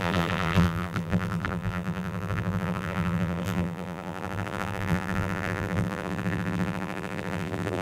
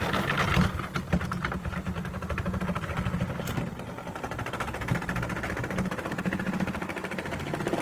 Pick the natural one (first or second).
second